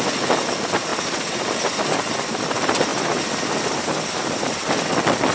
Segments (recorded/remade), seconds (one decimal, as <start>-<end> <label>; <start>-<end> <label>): 0.0-2.9 recorded; 2.9-3.6 remade; 3.6-5.3 recorded

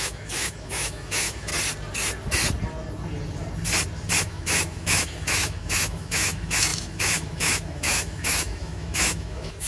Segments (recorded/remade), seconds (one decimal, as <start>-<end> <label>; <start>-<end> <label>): 0.0-1.5 remade; 1.5-4.2 recorded; 4.2-9.7 remade

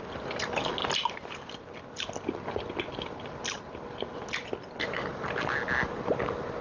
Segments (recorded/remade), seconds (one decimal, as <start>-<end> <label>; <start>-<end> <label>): 0.0-6.6 recorded